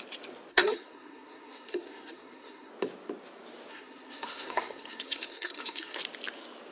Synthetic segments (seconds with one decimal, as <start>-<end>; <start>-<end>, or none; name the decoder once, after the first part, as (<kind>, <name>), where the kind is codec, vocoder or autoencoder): 0.5-2.7 (codec, SNAC); 3.7-6.0